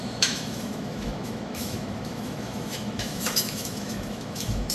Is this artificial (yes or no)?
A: yes